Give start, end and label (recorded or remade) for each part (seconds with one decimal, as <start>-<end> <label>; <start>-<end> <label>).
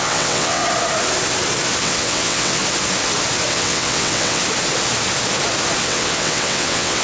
0.0-0.6 remade; 0.6-1.8 recorded; 1.8-2.6 remade; 2.6-3.5 recorded; 3.5-4.4 remade; 4.4-5.8 recorded; 5.8-7.0 remade